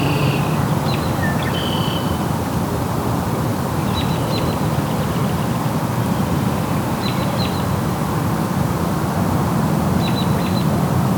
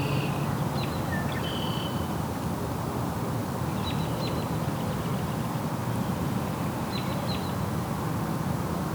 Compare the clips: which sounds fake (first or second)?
first